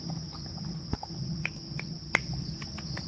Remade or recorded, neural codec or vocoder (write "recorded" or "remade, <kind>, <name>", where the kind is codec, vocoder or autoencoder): recorded